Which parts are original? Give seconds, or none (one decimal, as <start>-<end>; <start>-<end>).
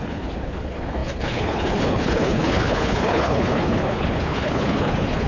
none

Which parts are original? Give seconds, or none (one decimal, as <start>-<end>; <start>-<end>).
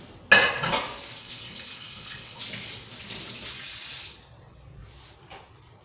0.0-1.2; 2.4-5.8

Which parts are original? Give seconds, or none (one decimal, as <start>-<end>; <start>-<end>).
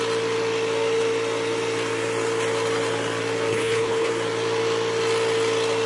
0.0-3.5; 4.1-5.9